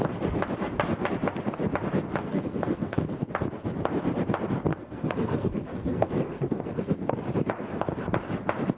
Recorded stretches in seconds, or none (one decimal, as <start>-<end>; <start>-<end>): 0.0-2.2; 3.3-4.7; 7.2-8.8